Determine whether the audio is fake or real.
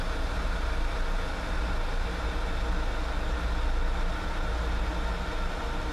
real